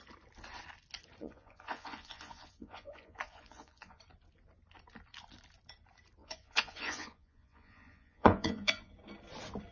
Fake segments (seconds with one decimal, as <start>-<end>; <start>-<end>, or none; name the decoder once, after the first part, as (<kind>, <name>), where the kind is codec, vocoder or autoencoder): 1.2-4.0 (vocoder, Vocos); 6.2-8.9

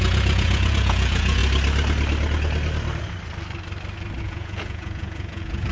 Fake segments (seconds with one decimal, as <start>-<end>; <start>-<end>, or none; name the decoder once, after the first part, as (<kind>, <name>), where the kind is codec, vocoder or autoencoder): 0.0-1.4 (vocoder, Vocos); 4.2-5.7